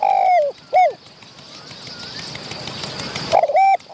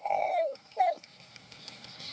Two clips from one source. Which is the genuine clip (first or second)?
first